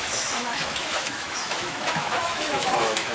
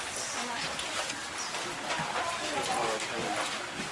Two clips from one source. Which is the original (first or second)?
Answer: second